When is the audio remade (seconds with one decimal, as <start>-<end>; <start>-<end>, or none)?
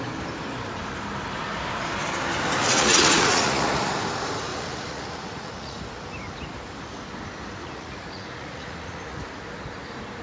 2.6-3.9; 4.5-5.8; 7.6-9.2